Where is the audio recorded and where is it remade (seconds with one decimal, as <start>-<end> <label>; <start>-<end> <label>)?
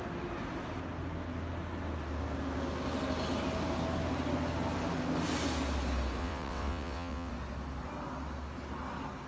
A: 0.0-6.2 recorded; 6.2-7.3 remade; 7.3-9.3 recorded